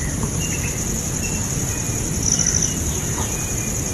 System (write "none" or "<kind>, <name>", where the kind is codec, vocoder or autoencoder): none